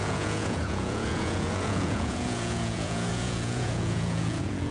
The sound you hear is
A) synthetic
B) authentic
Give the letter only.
A